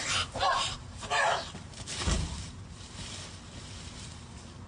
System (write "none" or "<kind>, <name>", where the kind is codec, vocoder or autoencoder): vocoder, BigVGAN v2